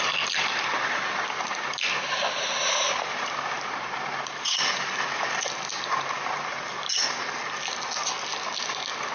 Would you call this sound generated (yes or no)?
no